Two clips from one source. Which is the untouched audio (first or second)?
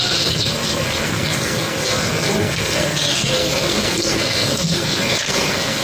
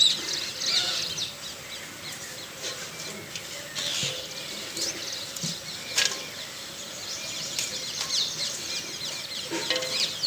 second